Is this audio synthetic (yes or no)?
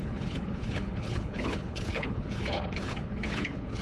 yes